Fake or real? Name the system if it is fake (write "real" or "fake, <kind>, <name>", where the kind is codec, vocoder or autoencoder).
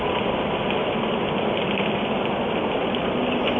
real